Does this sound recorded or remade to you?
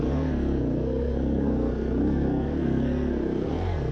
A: remade